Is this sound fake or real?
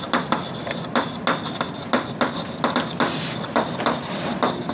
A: real